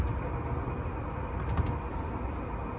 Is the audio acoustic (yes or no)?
yes